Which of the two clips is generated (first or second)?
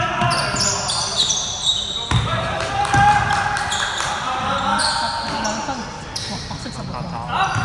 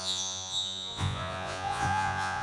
second